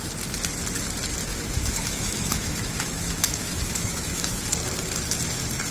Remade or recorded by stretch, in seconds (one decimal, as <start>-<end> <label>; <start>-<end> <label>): 0.0-1.3 recorded; 1.3-4.4 remade; 4.4-5.7 recorded